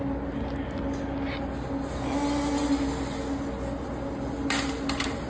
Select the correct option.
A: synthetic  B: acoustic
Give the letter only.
B